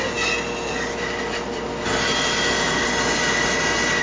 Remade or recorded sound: recorded